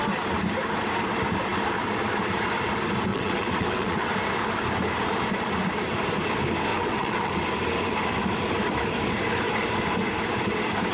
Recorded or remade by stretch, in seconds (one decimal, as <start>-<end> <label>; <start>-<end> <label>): 0.0-3.1 recorded; 3.1-4.1 remade; 4.1-6.7 recorded; 6.7-7.3 remade; 7.3-10.9 recorded